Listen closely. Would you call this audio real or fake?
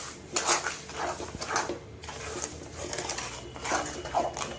real